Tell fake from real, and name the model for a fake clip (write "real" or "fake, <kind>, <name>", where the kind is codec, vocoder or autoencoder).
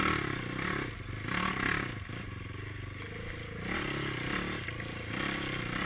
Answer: real